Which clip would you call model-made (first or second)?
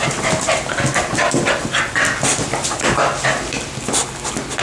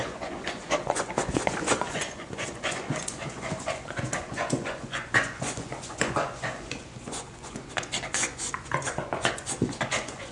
second